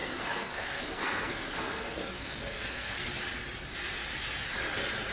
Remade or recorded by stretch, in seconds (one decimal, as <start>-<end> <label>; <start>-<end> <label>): 0.0-3.1 remade; 3.1-5.1 recorded